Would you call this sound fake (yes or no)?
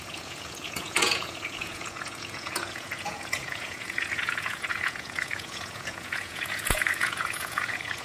yes